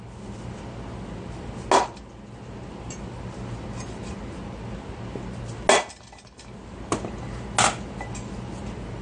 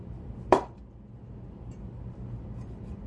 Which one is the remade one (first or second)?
second